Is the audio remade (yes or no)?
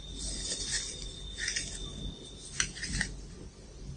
no